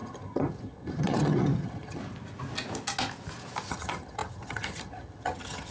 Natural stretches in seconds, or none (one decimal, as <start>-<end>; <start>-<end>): 2.0-3.7